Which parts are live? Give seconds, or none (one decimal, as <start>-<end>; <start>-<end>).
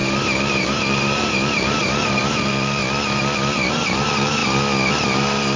2.8-3.7; 4.4-4.9